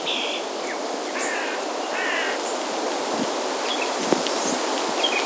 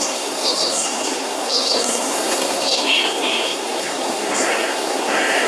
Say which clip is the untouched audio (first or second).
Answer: first